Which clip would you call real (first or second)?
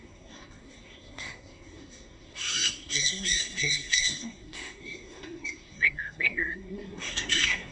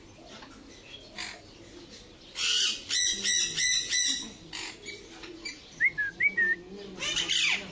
second